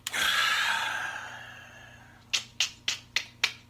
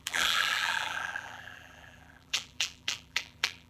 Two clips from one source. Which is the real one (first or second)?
first